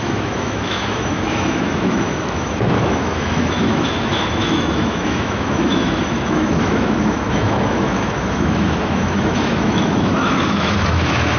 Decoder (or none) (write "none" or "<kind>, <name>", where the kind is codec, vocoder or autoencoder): autoencoder, DAC-VAE